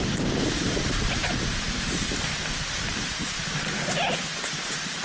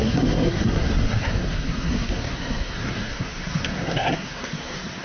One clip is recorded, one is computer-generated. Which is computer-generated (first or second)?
second